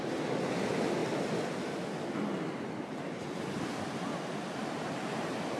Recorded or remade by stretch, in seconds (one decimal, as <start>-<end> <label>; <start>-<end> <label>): 0.0-5.6 recorded